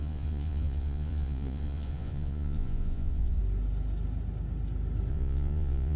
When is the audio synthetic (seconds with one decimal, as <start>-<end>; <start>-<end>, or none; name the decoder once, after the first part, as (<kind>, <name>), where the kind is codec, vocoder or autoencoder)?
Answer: 0.0-3.4 (vocoder, Vocos); 5.1-6.0